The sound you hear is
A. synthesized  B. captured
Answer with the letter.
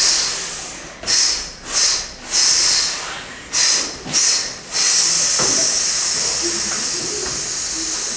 B